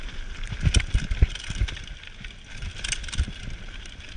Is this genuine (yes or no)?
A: yes